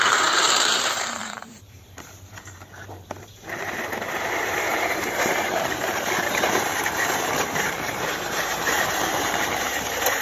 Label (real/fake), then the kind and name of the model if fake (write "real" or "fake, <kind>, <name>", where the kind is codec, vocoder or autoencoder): fake, vocoder, BigVGAN v2